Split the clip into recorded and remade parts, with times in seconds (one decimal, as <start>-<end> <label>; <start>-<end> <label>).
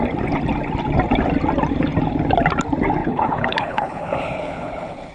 0.0-3.0 recorded; 3.0-5.1 remade